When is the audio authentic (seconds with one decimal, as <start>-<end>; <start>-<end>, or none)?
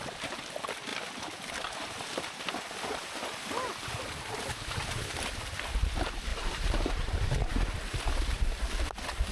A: 0.0-6.3; 7.5-9.3